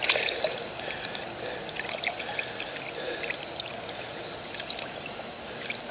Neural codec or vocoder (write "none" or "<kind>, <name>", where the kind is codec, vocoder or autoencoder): none